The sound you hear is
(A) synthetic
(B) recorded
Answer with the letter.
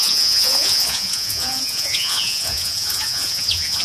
A